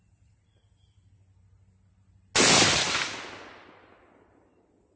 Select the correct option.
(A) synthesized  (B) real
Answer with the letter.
B